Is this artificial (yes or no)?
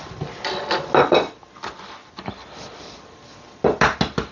no